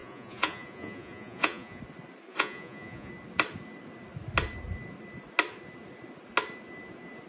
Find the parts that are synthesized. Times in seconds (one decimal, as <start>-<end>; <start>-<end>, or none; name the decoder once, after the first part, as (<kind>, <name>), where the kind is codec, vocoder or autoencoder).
0.0-1.8 (vocoder, Vocos); 2.3-3.1